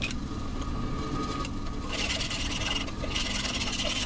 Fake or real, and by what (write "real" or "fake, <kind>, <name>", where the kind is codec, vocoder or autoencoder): real